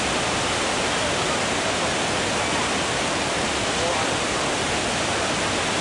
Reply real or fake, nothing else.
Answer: real